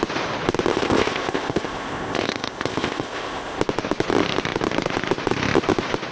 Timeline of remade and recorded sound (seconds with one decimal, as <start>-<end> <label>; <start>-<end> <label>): 0.0-0.7 recorded; 0.7-3.6 remade; 3.6-6.1 recorded